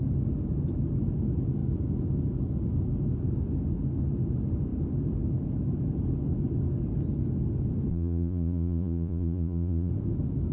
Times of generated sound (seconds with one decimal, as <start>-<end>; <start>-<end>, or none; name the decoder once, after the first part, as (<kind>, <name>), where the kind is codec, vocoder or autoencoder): 7.9-9.9 (vocoder, Vocos)